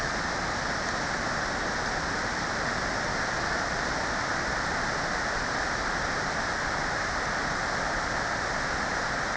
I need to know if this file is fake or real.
real